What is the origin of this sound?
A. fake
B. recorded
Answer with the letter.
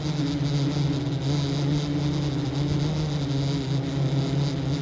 B